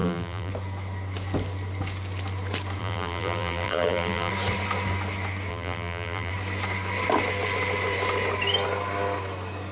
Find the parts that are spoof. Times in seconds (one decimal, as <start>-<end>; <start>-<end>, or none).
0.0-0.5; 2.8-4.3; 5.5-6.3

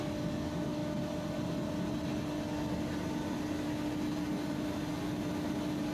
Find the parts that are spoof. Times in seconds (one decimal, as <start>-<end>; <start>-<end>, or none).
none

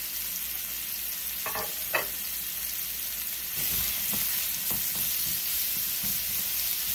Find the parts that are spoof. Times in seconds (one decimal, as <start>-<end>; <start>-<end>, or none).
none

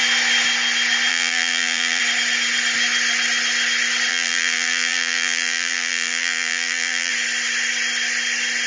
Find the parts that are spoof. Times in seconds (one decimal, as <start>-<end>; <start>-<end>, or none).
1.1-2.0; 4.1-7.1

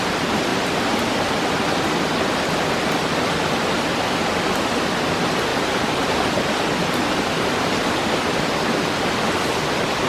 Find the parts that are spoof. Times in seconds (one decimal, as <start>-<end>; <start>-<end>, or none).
0.5-1.0; 5.5-6.4

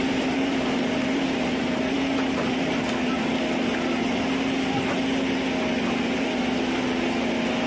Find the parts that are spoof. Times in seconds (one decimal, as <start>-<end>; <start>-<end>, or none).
0.0-3.3

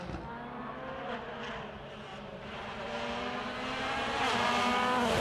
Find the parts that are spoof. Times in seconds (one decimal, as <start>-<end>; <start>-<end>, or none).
2.1-4.2

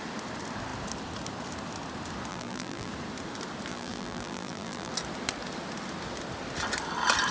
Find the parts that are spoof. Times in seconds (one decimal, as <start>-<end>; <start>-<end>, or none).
2.3-2.9; 3.7-4.9